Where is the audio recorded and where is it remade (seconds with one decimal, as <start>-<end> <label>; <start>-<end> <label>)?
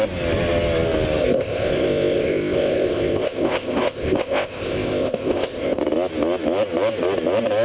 0.0-1.2 recorded; 1.2-5.8 remade; 5.8-7.6 recorded